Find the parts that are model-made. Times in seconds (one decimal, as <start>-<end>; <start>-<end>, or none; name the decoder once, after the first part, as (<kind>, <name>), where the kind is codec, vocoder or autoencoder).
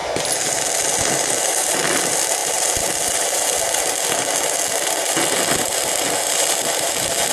none